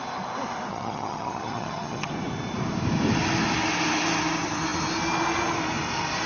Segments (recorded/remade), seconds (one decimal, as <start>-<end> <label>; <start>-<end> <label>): 0.0-0.7 recorded; 0.7-2.1 remade; 2.1-6.3 recorded